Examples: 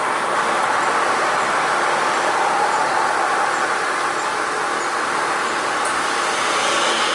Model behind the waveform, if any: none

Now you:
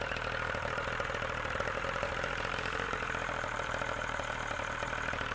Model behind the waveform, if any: vocoder, BigVGAN v2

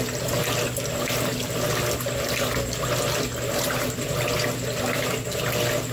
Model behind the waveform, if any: none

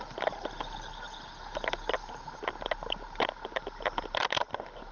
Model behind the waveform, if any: none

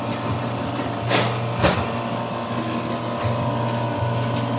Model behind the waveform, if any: none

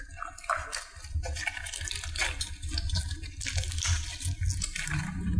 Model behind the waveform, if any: none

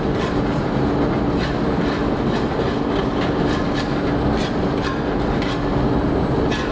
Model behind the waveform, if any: none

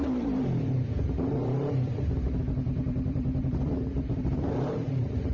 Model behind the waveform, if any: vocoder, BigVGAN v2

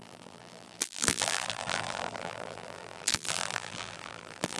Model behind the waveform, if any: vocoder, BigVGAN v2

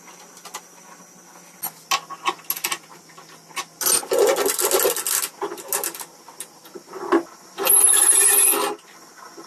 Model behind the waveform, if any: none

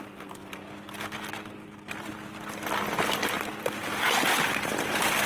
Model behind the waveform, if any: none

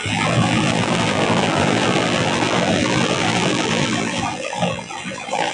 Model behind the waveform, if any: vocoder, BigVGAN v2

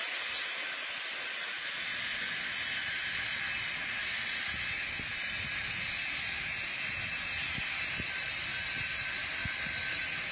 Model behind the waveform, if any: none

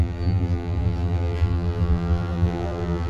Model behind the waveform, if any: vocoder, BigVGAN v2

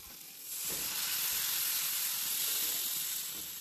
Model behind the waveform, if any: none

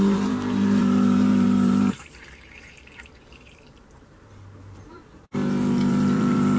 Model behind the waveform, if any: vocoder, BigVGAN v2